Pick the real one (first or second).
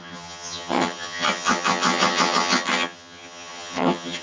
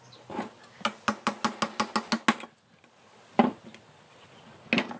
second